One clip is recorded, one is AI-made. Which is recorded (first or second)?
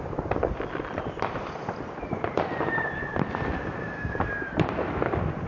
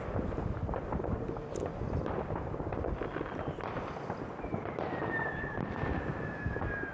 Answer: second